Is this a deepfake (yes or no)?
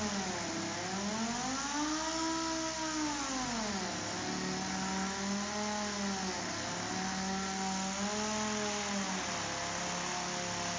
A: no